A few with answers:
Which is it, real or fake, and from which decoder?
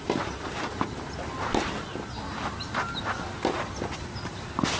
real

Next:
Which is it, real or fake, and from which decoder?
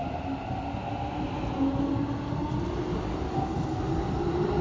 real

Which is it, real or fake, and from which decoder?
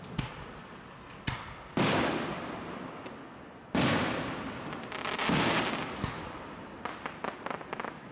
real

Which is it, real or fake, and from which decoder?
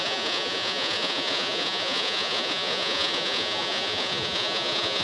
fake, vocoder, Vocos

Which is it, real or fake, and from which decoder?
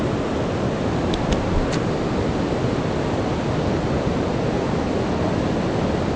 real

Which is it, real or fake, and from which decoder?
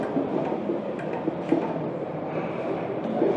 real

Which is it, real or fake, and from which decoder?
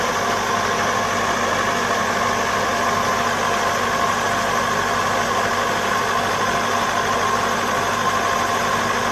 real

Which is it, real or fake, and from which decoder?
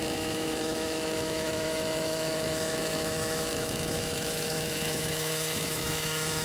fake, autoencoder, DAC-VAE